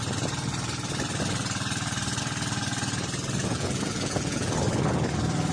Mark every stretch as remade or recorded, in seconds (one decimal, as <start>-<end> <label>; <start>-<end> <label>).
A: 0.0-3.4 recorded; 3.4-4.5 remade; 4.5-5.5 recorded